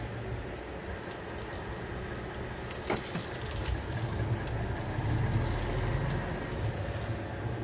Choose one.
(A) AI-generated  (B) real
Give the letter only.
B